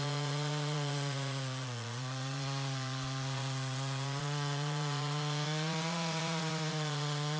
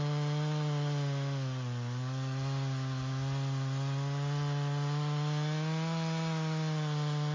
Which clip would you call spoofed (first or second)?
first